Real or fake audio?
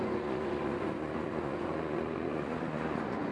fake